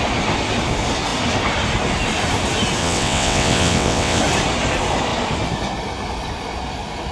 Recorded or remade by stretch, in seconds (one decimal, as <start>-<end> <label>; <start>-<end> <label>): 0.0-2.8 recorded; 2.8-4.2 remade; 4.2-7.1 recorded